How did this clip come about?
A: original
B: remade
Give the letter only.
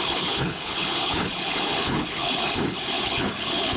B